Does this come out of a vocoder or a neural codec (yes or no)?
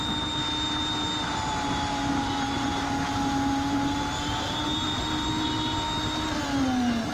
no